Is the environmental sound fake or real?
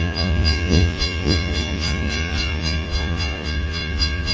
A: fake